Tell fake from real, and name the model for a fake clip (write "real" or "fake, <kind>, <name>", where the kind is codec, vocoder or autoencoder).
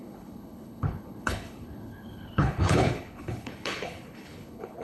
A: fake, codec, HILCodec